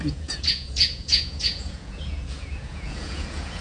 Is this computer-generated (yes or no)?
yes